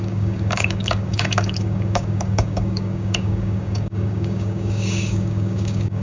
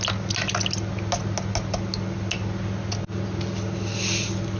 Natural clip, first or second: second